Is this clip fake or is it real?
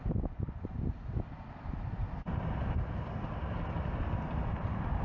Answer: real